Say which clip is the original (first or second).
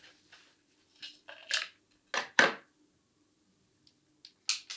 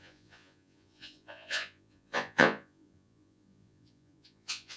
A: first